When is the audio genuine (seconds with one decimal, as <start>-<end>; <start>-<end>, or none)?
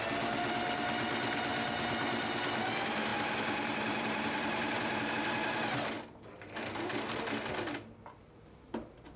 0.0-3.1; 5.1-9.2